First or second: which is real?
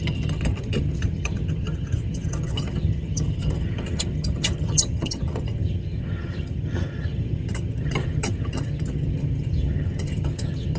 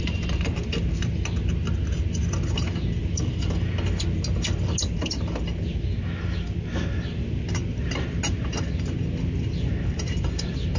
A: second